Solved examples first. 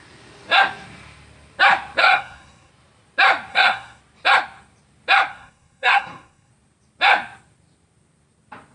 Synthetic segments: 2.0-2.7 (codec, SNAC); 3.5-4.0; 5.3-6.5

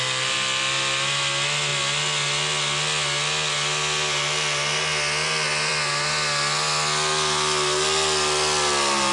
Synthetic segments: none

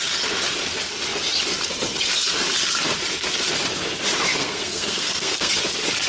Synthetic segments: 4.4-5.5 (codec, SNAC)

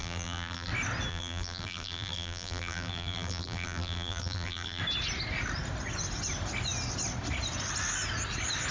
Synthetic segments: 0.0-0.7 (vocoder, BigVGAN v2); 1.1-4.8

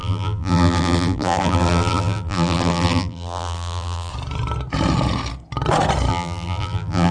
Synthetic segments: 0.0-4.1 (vocoder, BigVGAN v2); 6.1-7.1